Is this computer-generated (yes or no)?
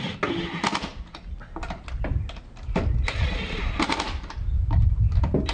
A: no